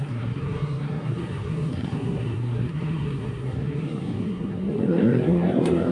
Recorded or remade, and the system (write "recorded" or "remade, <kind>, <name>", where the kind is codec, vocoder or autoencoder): remade, codec, SNAC